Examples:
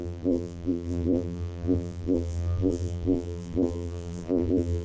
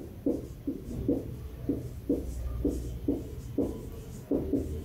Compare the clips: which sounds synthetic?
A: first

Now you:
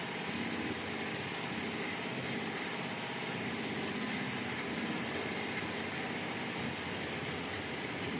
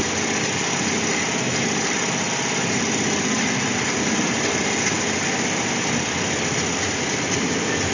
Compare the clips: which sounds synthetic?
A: second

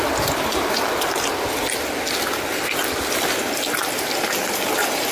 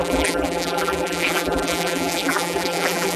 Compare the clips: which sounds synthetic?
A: second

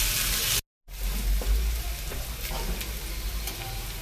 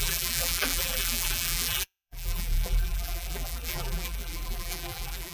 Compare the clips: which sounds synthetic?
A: second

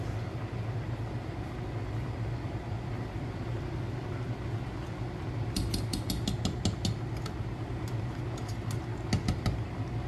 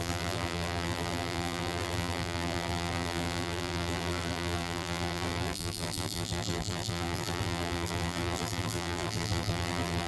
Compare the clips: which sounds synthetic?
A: second